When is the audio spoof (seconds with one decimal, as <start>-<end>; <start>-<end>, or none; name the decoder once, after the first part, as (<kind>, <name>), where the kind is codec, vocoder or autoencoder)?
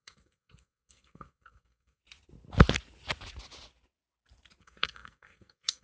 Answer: 0.0-2.0 (codec, SNAC); 4.6-5.8